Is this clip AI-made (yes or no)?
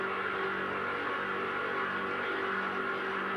no